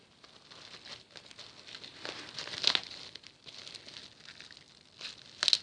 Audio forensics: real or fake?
real